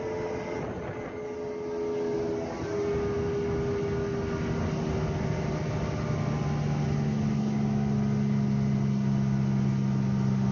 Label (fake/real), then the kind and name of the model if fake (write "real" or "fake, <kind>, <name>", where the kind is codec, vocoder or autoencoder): real